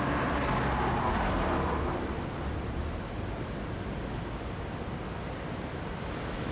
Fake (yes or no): no